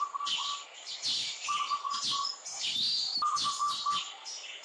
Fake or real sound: real